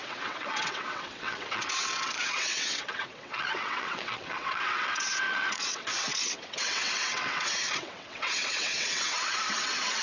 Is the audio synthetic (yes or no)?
yes